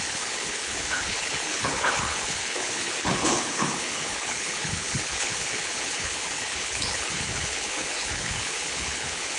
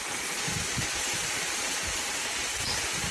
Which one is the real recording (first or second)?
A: second